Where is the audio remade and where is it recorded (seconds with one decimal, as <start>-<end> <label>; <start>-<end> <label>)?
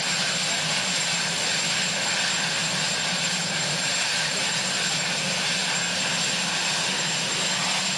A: 0.0-2.6 recorded; 2.6-4.6 remade; 4.6-8.0 recorded